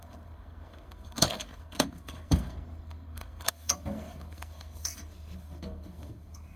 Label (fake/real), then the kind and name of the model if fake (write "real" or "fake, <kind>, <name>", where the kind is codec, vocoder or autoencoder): fake, codec, SNAC